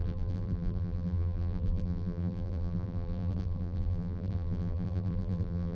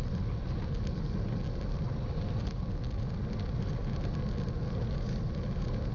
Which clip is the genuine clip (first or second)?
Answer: second